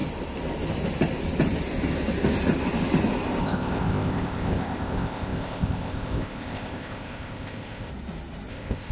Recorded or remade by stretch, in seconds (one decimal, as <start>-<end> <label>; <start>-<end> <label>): 0.0-3.4 recorded; 3.4-7.9 remade; 7.9-8.5 recorded; 8.5-8.9 remade